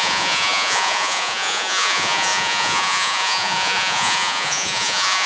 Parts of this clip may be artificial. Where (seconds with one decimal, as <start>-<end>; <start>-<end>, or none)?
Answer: 0.0-5.3